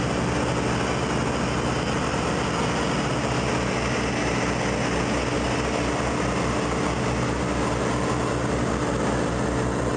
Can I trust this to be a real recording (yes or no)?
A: yes